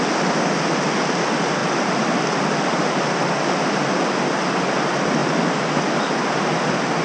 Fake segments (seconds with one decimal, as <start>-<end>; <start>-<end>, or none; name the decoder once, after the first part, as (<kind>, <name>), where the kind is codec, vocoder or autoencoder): 1.6-4.0 (vocoder, BigVGAN v2); 5.2-6.3